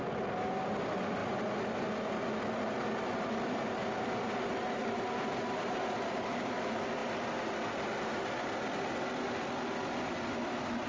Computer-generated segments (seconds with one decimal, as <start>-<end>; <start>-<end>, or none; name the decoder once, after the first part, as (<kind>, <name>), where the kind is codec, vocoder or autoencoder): none